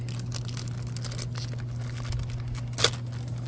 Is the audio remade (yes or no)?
no